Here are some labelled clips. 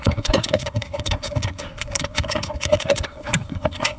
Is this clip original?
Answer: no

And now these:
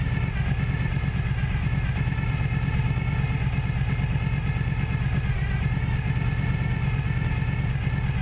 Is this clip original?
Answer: yes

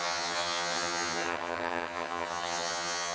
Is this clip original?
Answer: no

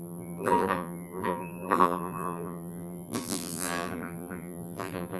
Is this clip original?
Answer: no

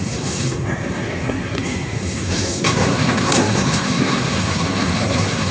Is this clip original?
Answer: no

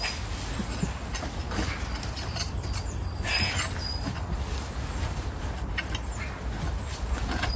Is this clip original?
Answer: yes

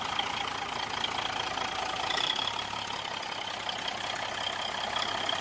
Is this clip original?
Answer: yes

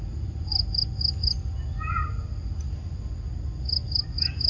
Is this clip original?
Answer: yes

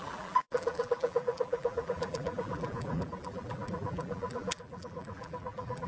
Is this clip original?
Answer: no